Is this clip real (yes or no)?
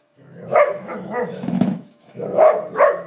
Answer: no